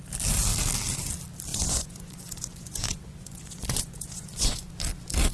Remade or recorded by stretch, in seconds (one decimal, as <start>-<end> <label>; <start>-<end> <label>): 0.0-1.5 recorded; 1.5-4.7 remade; 4.7-5.3 recorded